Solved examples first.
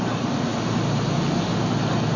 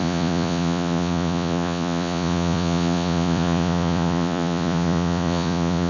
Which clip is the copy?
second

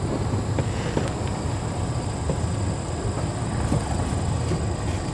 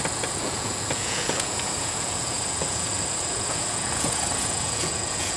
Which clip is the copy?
second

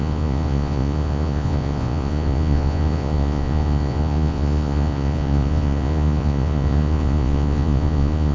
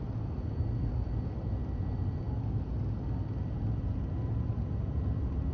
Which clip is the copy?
first